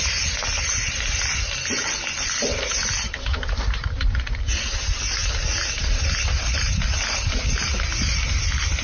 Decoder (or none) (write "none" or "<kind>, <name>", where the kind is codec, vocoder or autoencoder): none